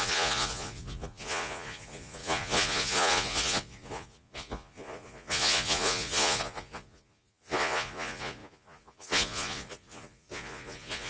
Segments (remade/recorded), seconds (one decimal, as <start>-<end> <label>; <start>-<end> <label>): 0.0-11.1 remade